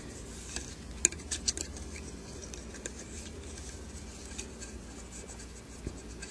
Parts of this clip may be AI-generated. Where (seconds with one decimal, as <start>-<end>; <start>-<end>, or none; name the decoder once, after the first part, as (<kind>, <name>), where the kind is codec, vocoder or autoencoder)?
2.4-4.9 (vocoder, BigVGAN v2)